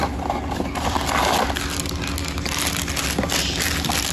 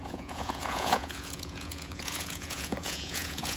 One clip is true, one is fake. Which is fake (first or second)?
second